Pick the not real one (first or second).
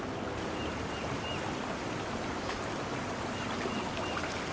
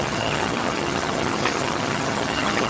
second